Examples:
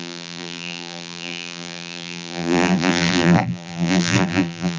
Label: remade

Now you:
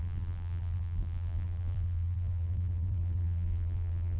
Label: remade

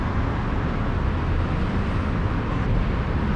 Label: recorded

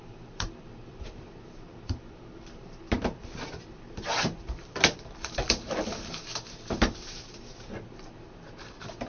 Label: remade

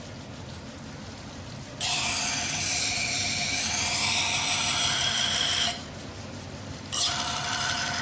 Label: remade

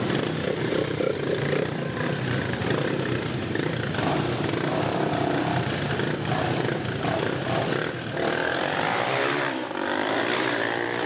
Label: remade